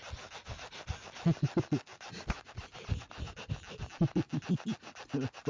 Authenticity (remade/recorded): recorded